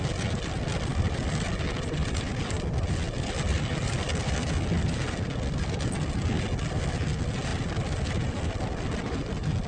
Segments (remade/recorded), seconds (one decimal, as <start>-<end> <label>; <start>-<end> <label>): 0.0-9.7 recorded

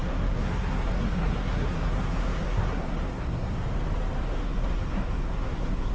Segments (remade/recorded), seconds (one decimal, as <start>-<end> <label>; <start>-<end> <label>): 0.0-3.5 remade; 3.5-4.2 recorded; 4.2-5.9 remade